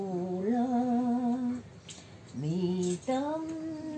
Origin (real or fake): real